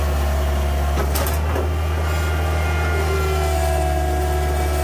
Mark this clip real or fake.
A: real